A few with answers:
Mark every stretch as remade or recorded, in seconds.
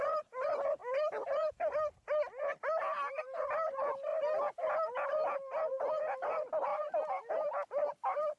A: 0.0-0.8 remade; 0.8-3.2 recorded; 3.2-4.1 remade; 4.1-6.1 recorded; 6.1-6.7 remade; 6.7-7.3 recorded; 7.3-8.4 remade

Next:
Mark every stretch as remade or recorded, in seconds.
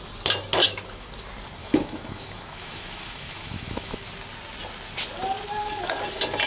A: 0.0-0.6 recorded; 0.6-1.1 remade; 1.1-1.6 recorded; 1.6-4.0 remade; 4.0-6.5 recorded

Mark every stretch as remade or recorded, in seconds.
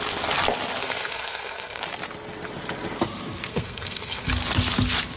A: 0.0-0.8 recorded; 0.8-1.8 remade; 1.8-3.5 recorded; 3.5-4.3 remade; 4.3-5.2 recorded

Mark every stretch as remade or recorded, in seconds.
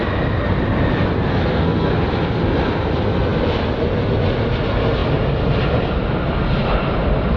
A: 0.0-1.3 recorded; 1.3-1.9 remade; 1.9-7.4 recorded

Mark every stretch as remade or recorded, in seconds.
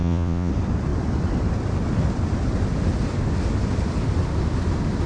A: 0.0-0.5 remade; 0.5-5.1 recorded